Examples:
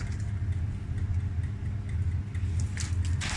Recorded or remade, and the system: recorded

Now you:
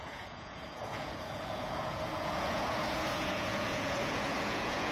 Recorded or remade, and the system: remade, vocoder, Vocos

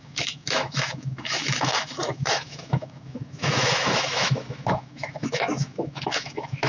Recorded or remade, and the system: remade, autoencoder, DAC-VAE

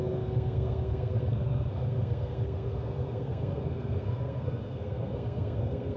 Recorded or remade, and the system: remade, codec, SNAC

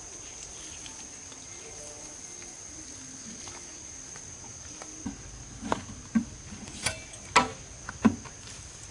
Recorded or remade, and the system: recorded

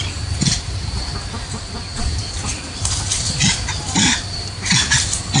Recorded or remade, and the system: recorded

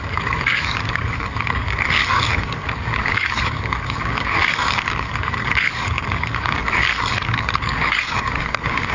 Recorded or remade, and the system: remade, codec, DAC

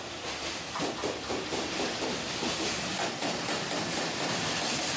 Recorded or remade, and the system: remade, vocoder, BigVGAN v2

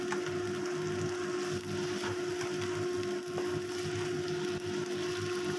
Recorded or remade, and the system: recorded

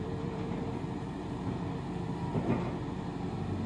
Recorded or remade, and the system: remade, vocoder, BigVGAN v2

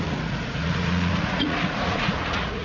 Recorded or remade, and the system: remade, vocoder, Vocos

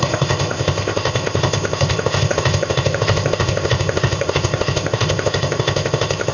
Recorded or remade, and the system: remade, codec, ZipCodec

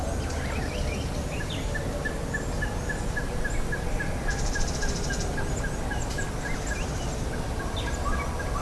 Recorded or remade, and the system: recorded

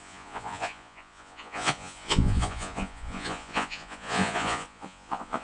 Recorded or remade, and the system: remade, vocoder, Vocos